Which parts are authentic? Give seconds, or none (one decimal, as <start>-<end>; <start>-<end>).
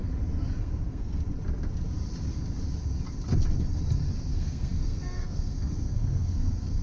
0.0-0.6; 1.2-4.3